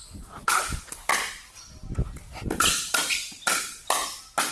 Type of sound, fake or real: real